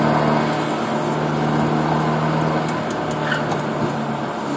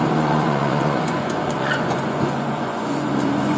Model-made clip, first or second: second